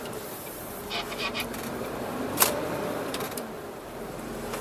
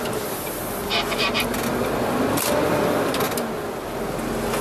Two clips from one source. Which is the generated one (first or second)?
first